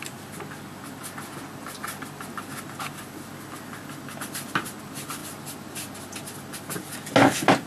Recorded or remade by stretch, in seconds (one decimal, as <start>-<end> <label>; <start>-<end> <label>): 0.0-7.7 recorded